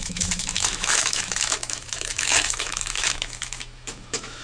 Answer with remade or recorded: remade